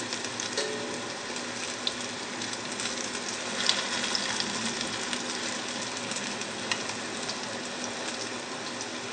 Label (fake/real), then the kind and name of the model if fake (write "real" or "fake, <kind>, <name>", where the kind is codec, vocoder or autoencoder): real